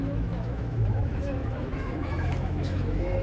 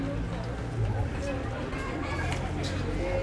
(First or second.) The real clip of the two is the second